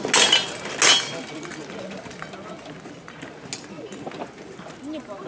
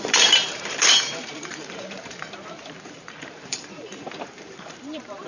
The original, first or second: first